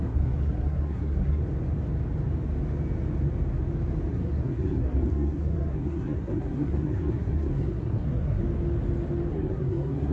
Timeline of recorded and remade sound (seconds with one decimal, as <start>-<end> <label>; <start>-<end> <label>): 0.0-1.4 remade; 1.4-4.1 recorded; 4.1-8.4 remade; 8.4-9.3 recorded; 9.3-10.1 remade